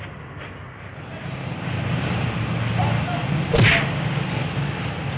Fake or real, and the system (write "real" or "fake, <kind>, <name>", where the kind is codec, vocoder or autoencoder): real